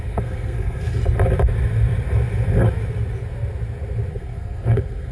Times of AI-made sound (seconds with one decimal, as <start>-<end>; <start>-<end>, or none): 0.0-1.0; 4.1-5.1